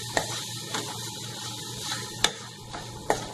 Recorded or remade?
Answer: recorded